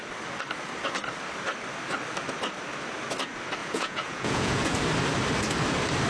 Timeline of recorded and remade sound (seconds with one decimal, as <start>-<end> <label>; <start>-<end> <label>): 0.0-3.6 recorded; 3.6-4.7 remade; 4.7-6.1 recorded